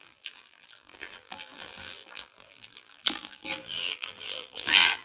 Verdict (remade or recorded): remade